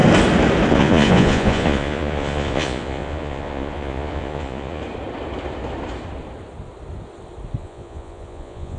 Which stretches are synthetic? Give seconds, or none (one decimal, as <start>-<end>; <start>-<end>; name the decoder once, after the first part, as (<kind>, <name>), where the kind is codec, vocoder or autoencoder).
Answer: 0.7-4.8 (vocoder, Vocos); 7.6-8.8